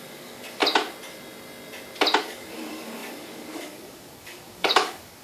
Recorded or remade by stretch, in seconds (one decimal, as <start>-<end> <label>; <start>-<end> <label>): 0.0-0.6 remade; 0.6-2.2 recorded; 2.2-5.2 remade